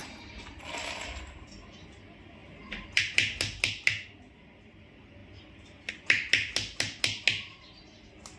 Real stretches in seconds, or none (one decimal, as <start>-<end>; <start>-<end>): 0.6-8.4